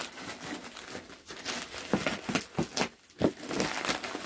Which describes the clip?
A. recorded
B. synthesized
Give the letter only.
A